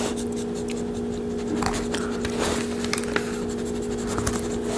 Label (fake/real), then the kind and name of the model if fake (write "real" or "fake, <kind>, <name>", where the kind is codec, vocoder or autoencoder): real